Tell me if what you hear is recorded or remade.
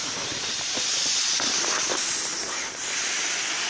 recorded